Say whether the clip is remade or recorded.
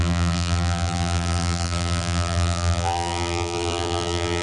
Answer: remade